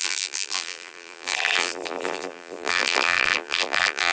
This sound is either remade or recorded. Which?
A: remade